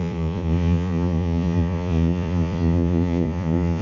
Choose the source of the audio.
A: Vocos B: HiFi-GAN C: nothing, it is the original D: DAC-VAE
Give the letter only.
A